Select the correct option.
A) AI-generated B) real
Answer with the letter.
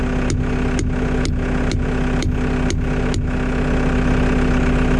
B